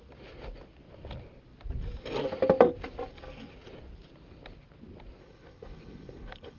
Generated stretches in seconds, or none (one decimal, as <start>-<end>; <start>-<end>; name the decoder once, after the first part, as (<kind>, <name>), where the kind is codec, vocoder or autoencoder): 5.2-6.6 (codec, HILCodec)